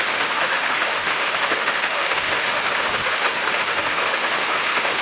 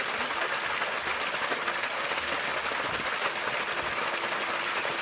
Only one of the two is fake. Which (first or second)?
first